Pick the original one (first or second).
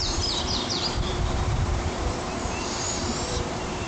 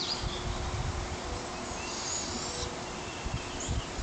second